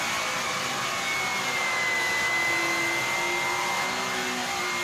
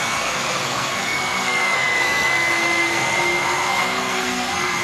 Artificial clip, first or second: second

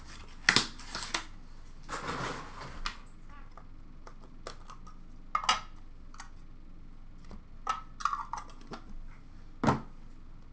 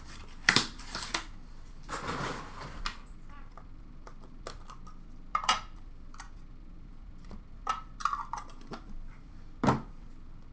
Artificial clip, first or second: second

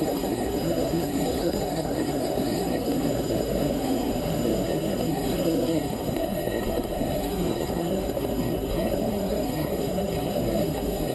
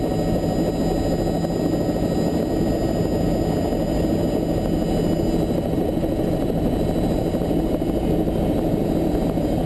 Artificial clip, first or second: first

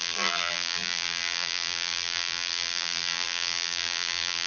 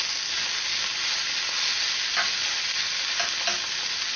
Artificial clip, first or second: first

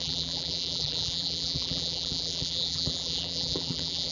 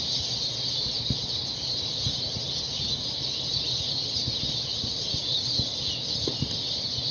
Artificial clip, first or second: first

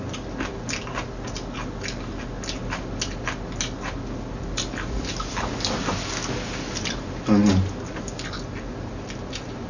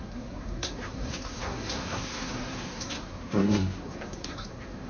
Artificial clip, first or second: second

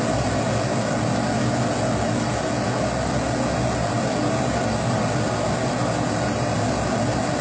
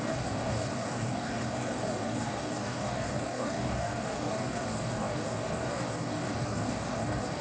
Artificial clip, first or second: second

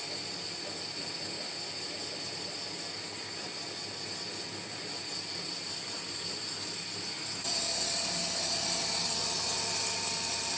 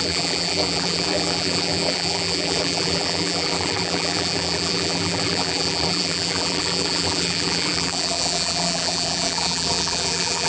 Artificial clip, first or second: second